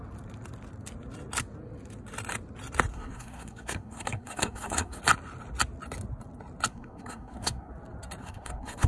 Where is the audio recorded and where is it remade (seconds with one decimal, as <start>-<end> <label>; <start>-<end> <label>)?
0.0-2.9 recorded; 2.9-5.0 remade; 5.0-6.7 recorded; 6.7-7.7 remade; 7.7-8.2 recorded; 8.2-8.9 remade